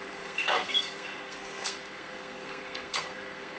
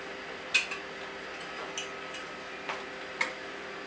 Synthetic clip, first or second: first